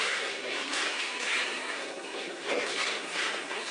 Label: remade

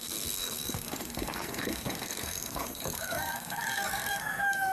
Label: remade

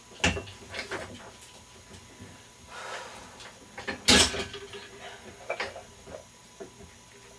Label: recorded